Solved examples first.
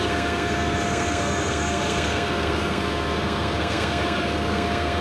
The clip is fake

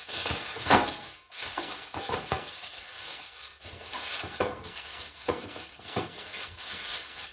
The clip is fake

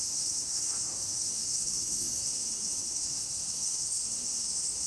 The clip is fake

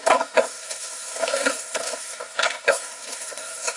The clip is fake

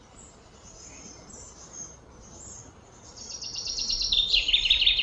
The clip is real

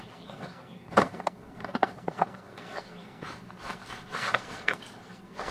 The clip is fake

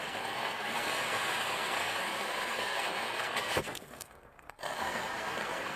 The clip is fake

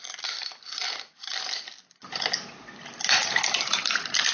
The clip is real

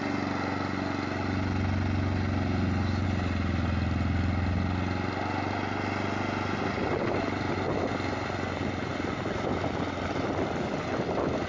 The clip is real